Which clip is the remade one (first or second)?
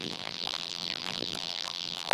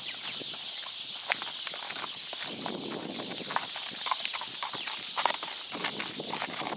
first